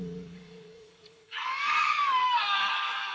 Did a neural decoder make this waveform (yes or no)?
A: yes